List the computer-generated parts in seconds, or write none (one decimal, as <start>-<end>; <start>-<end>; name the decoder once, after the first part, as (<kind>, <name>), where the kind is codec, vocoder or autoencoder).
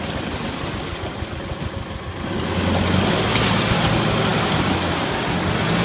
none